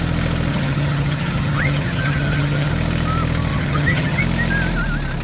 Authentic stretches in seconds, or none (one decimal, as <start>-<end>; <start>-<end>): 0.0-0.5; 2.7-3.5; 4.2-5.2